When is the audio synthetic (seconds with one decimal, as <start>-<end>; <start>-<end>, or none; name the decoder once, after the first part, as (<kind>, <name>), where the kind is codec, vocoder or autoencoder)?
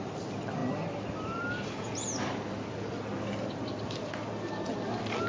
none